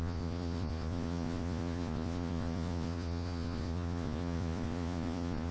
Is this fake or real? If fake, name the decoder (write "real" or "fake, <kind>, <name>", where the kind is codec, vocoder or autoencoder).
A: fake, vocoder, Vocos